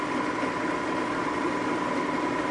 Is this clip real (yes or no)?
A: yes